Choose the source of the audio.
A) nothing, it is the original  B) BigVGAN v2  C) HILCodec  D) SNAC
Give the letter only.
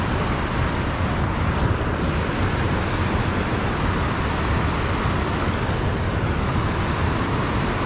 A